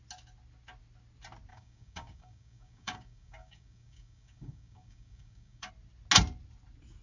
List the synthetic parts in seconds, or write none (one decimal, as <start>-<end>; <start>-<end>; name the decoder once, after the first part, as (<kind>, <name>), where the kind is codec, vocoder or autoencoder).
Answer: 1.5-5.7 (codec, DAC)